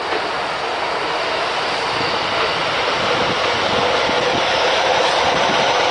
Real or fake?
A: real